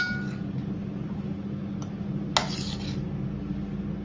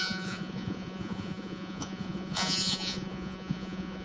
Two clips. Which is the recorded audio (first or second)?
first